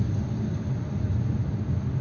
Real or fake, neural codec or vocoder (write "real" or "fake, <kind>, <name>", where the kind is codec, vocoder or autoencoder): real